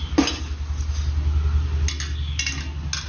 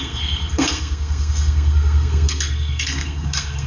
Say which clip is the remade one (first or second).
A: second